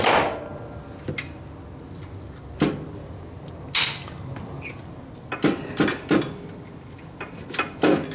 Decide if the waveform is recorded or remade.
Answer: recorded